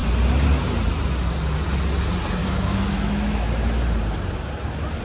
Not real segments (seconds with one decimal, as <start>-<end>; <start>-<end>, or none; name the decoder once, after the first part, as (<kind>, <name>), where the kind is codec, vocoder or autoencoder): 2.4-3.5 (autoencoder, DAC-VAE)